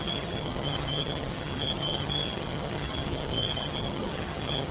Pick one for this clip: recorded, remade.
remade